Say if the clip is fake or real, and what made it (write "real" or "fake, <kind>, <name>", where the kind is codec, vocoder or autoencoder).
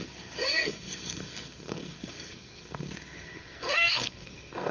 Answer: fake, codec, SNAC